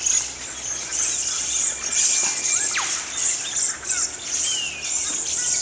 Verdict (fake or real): real